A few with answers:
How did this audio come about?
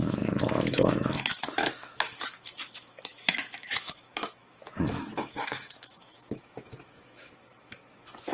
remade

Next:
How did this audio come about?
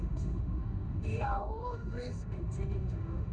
remade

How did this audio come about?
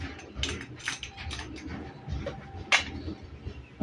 recorded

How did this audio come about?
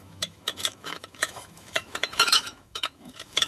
remade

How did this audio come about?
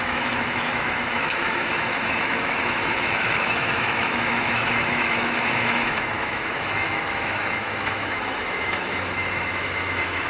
remade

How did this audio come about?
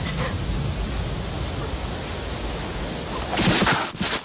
recorded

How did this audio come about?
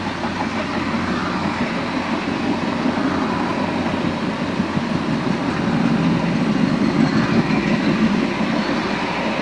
recorded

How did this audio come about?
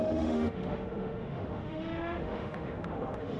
remade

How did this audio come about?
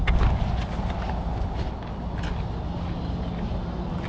recorded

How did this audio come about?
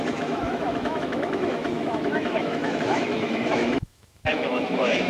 remade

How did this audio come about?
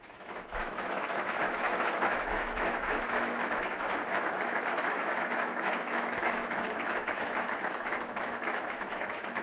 remade